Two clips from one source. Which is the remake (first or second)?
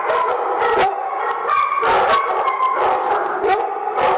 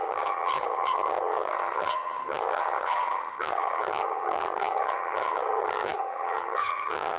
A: second